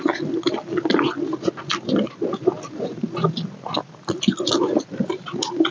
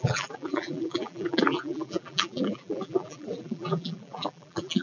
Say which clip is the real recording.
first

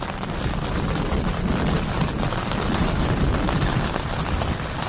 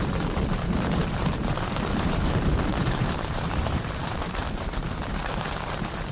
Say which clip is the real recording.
first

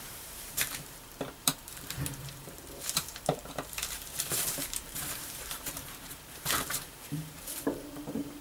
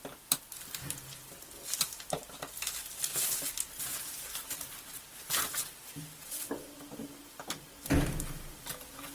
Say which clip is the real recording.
second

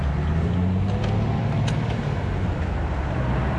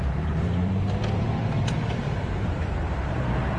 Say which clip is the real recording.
first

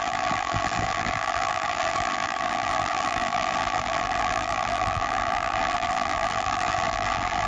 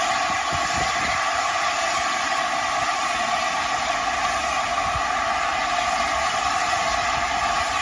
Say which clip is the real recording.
second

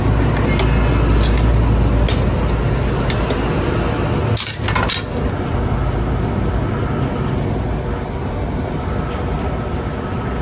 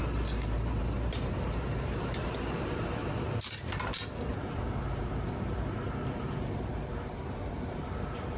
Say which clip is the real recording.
first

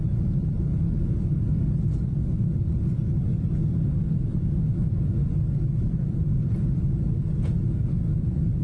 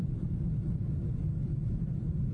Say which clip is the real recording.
first